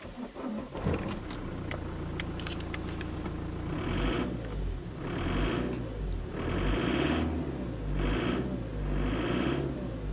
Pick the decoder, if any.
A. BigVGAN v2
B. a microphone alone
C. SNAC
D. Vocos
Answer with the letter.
B